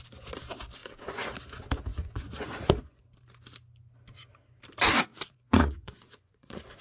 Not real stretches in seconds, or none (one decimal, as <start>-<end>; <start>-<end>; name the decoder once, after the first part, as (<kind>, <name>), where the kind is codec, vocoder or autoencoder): 0.8-1.3 (vocoder, Vocos); 1.9-3.0; 5.1-6.8